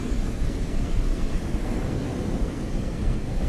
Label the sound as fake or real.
fake